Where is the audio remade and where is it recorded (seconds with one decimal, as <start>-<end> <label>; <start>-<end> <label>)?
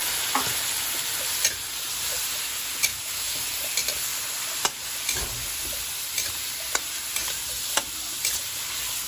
0.0-2.9 recorded; 2.9-3.5 remade; 3.5-9.1 recorded